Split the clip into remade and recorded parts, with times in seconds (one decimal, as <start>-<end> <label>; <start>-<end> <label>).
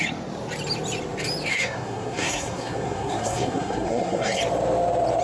0.0-1.5 recorded; 1.5-4.4 remade; 4.4-5.2 recorded